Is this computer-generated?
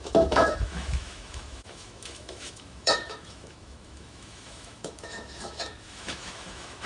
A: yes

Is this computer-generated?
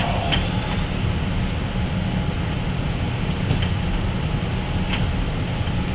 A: no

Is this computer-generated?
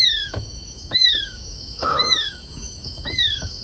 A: yes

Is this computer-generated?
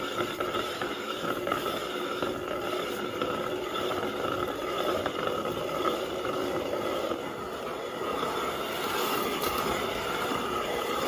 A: no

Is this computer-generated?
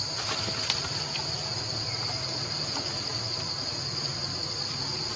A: no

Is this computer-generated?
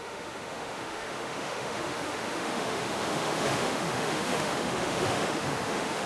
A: yes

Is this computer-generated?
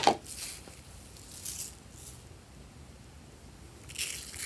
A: no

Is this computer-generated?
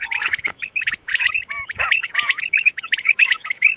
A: yes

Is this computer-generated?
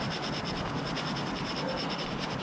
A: no